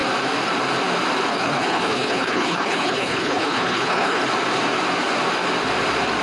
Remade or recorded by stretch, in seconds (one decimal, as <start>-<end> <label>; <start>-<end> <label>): 0.0-1.3 recorded; 1.3-4.2 remade; 4.2-6.2 recorded